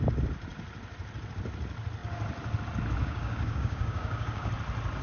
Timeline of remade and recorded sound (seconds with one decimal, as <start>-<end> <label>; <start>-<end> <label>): 0.0-3.0 recorded; 3.0-4.5 remade; 4.5-5.0 recorded